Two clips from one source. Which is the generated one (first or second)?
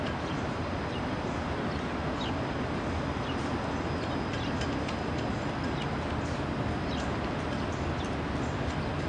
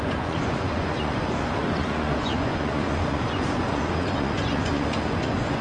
second